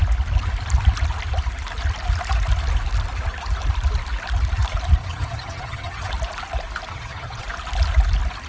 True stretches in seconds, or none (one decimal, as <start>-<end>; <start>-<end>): 0.0-5.0; 6.1-6.9; 7.4-8.5